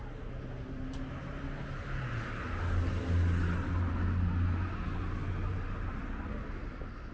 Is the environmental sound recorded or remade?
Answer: recorded